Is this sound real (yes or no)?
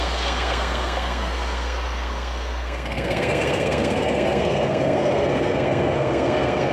no